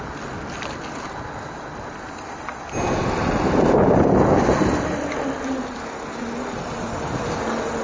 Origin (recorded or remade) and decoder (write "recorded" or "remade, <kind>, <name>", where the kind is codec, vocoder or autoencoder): recorded